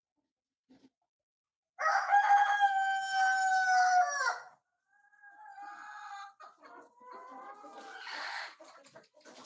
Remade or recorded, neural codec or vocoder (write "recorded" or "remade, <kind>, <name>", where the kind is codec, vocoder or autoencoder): recorded